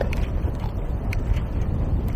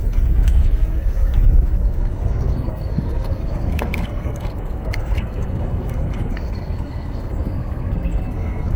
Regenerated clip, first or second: second